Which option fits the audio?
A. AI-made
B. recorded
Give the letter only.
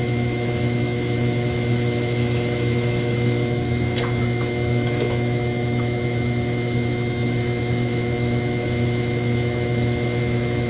A